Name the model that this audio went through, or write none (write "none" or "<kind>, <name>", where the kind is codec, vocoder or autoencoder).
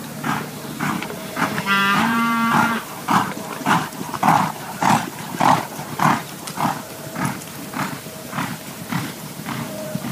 vocoder, BigVGAN v2